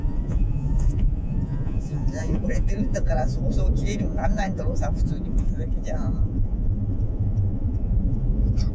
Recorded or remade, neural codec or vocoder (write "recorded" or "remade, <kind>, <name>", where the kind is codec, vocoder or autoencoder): remade, vocoder, Vocos